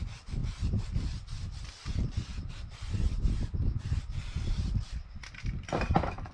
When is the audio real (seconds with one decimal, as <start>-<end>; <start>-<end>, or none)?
0.0-0.4; 1.7-2.3